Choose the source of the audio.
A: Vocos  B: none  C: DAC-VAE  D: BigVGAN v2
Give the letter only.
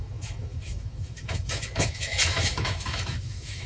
C